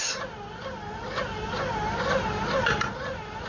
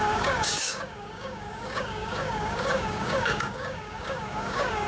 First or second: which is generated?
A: second